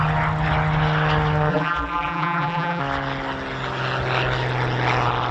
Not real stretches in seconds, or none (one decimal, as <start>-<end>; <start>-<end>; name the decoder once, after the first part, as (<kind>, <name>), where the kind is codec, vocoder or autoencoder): 1.5-2.8 (vocoder, BigVGAN v2)